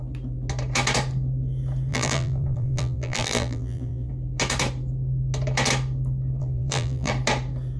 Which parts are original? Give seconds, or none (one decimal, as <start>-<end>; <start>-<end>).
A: 0.0-1.9; 4.1-6.4; 7.1-7.8